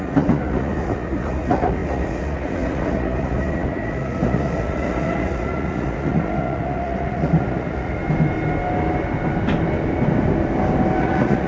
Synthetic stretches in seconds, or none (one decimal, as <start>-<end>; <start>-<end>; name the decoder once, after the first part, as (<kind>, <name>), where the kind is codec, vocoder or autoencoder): 0.0-8.0 (vocoder, Vocos); 11.0-11.5